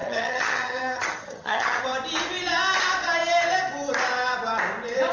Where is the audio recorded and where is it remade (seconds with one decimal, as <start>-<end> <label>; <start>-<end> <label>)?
0.0-1.8 remade; 1.8-5.1 recorded